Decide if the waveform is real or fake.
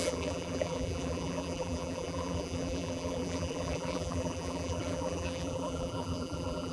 fake